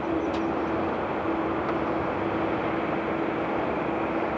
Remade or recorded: recorded